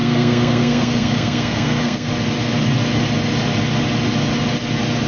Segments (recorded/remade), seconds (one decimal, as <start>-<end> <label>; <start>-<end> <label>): 0.0-2.1 remade; 2.1-5.1 recorded